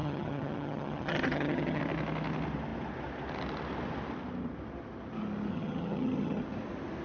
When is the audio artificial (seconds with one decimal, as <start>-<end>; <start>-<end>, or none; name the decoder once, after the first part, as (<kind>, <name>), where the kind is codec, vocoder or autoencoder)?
0.0-1.8 (vocoder, HiFi-GAN); 5.5-6.4